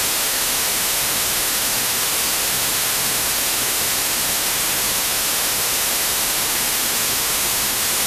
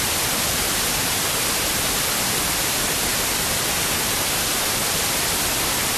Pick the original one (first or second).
second